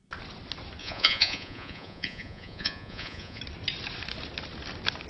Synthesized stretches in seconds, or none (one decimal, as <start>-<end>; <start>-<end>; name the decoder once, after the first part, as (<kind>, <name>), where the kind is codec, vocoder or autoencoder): 0.8-3.4 (vocoder, Vocos)